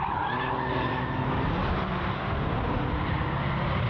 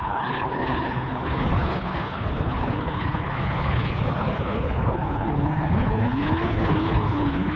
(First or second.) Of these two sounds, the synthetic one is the second